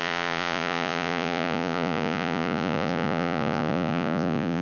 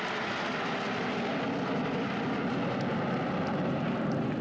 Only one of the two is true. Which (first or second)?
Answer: second